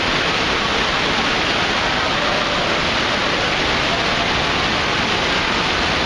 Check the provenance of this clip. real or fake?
real